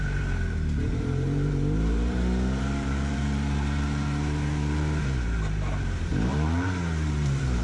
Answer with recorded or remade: remade